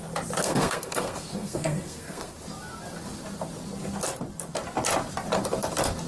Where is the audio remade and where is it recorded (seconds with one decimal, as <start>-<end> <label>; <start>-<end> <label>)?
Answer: 0.0-0.4 recorded; 0.4-2.3 remade; 2.3-6.1 recorded